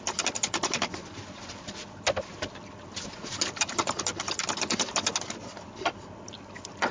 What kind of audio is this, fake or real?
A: real